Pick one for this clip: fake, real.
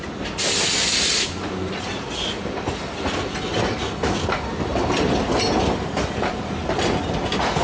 real